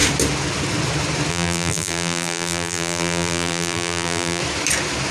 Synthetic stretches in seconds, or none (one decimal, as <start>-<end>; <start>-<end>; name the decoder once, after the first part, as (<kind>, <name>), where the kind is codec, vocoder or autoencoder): 1.3-4.4 (vocoder, BigVGAN v2)